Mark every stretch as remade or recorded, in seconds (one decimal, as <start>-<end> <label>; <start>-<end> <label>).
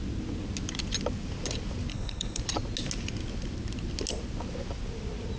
0.0-1.9 recorded; 1.9-2.4 remade; 2.4-5.4 recorded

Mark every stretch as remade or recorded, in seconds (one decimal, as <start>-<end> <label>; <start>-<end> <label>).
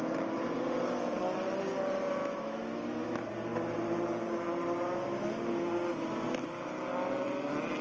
0.0-2.2 recorded; 2.2-3.3 remade; 3.3-7.8 recorded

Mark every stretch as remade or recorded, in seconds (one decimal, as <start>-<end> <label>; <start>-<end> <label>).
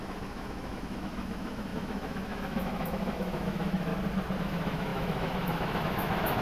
0.0-3.9 remade; 3.9-4.4 recorded; 4.4-6.4 remade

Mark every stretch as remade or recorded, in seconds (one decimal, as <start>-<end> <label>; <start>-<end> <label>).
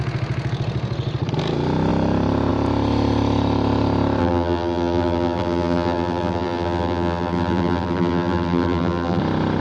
0.0-4.2 recorded; 4.2-9.2 remade; 9.2-9.6 recorded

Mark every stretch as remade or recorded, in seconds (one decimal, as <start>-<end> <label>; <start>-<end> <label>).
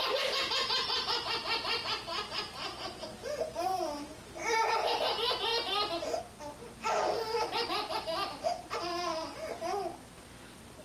0.0-5.5 remade; 5.5-7.7 recorded; 7.7-10.8 remade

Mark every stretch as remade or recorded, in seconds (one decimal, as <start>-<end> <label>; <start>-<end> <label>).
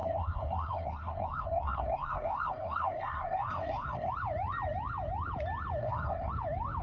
0.0-4.1 remade; 4.1-5.8 recorded; 5.8-6.3 remade; 6.3-6.8 recorded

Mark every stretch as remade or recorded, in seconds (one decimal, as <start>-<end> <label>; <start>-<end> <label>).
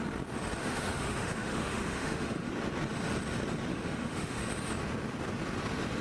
0.0-0.6 recorded; 0.6-2.5 remade; 2.5-3.7 recorded; 3.7-4.4 remade; 4.4-6.0 recorded